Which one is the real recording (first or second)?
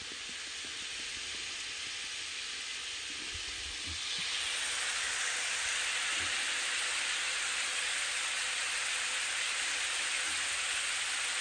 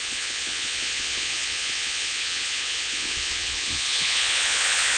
first